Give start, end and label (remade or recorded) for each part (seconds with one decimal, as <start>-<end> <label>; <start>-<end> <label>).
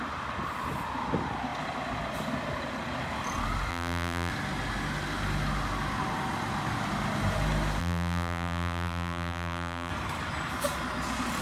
0.0-3.7 recorded; 3.7-4.3 remade; 4.3-7.8 recorded; 7.8-9.9 remade; 9.9-11.4 recorded